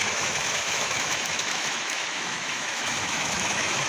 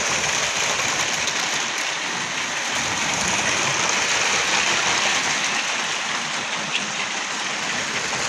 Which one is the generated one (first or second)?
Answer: first